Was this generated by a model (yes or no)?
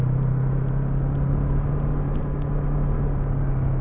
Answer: no